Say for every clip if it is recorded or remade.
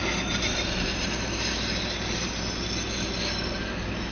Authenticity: recorded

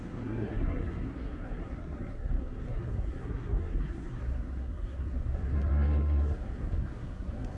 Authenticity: remade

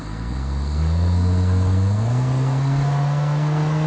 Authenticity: remade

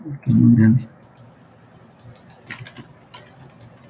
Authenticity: recorded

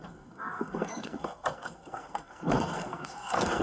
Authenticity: remade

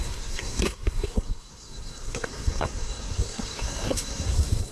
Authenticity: remade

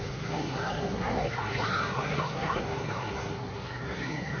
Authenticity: remade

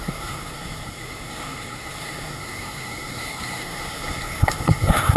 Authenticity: remade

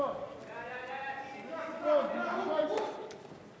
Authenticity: recorded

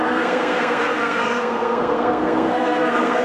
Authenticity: remade